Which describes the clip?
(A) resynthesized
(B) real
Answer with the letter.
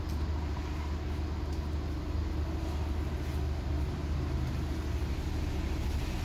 B